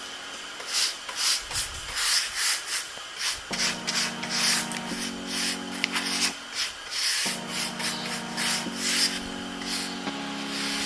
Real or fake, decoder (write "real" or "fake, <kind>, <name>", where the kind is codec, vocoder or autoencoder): real